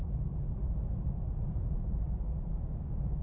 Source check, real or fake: fake